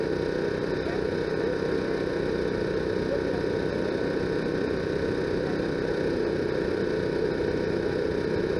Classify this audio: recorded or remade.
recorded